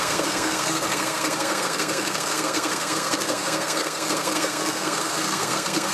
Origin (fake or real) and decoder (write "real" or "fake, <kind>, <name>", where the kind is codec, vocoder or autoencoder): fake, codec, SNAC